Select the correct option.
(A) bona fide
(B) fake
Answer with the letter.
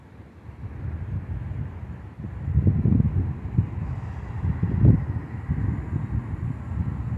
A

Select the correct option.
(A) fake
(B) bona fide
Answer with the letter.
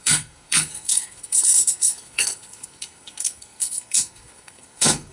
A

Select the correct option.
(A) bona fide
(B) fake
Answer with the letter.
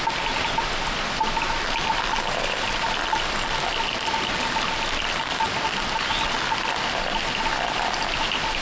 A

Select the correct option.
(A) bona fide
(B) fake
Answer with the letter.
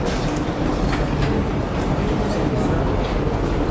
A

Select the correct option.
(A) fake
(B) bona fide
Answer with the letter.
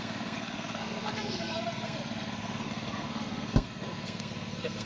A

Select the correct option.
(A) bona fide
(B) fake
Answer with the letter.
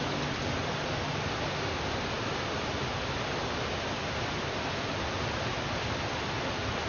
A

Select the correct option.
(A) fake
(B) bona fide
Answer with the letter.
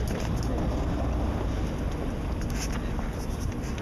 B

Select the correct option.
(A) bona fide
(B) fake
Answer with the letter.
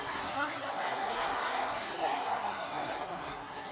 B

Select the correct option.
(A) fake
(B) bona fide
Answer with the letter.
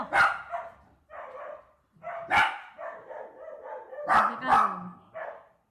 B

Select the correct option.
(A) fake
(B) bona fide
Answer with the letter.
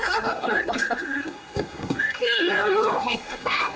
A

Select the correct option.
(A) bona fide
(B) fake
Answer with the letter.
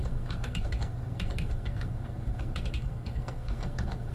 B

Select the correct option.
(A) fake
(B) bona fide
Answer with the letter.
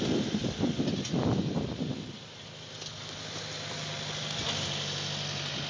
B